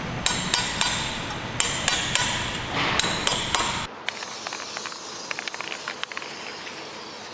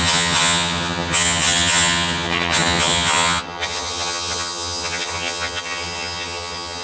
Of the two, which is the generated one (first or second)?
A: second